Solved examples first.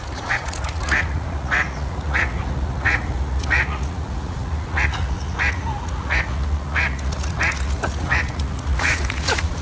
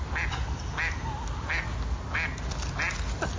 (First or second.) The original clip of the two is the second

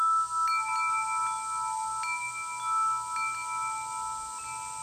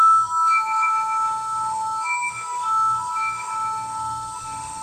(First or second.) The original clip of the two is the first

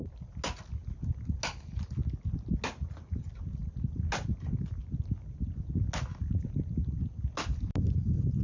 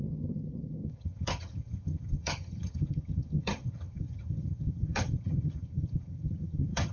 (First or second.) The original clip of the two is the first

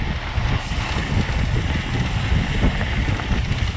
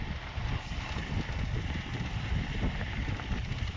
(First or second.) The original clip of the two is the first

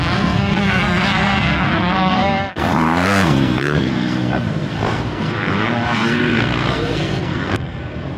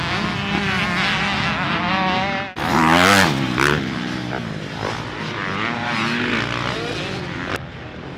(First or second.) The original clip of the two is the second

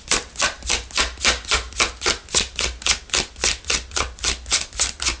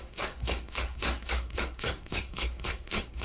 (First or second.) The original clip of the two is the first